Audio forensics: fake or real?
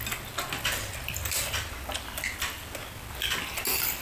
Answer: real